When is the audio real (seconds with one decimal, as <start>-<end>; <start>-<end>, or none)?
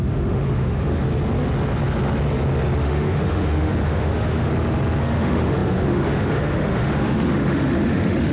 1.1-2.8; 4.5-5.0